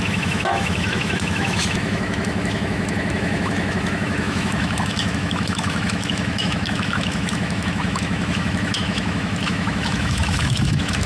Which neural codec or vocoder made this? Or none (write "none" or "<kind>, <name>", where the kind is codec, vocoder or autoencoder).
autoencoder, DAC-VAE